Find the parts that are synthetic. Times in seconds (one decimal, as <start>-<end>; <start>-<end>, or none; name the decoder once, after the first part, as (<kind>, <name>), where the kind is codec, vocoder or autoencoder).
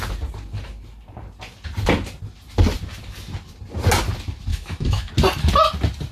4.5-5.1 (autoencoder, DAC-VAE)